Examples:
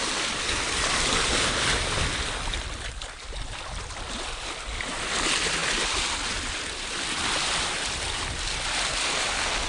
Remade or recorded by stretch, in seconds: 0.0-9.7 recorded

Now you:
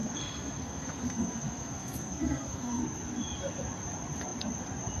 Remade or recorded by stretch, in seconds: 0.0-2.8 remade; 2.8-5.0 recorded

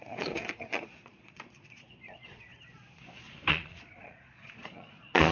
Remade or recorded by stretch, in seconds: 0.0-2.5 remade; 2.5-3.5 recorded; 3.5-5.3 remade

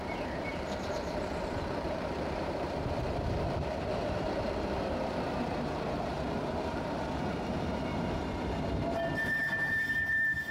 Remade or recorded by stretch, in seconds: 0.0-8.2 remade; 8.2-9.5 recorded; 9.5-10.5 remade

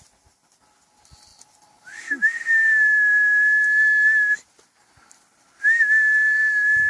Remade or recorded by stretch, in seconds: 0.0-6.9 recorded